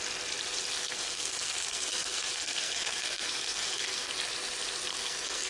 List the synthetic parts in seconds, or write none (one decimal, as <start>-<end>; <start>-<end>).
0.8-4.1; 4.9-5.5